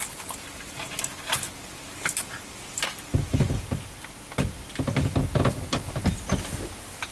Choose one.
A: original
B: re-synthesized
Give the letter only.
A